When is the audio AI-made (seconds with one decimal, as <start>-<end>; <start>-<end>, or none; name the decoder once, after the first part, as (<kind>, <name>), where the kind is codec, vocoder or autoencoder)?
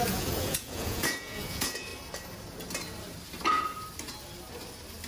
0.0-1.9 (vocoder, Vocos)